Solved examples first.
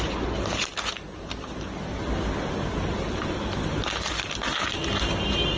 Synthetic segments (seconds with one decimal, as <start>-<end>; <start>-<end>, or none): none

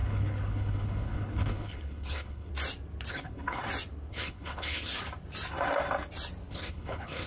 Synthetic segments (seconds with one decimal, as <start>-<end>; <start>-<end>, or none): 0.0-2.5; 3.1-3.6; 4.1-4.9; 6.5-7.3

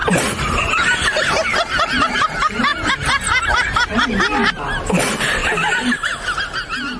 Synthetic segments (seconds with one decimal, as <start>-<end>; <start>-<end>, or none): 2.1-2.7; 4.9-5.4

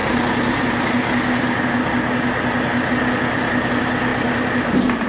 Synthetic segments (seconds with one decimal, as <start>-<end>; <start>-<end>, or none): none

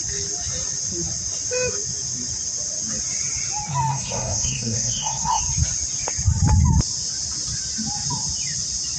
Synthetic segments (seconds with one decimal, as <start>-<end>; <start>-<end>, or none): 3.9-5.4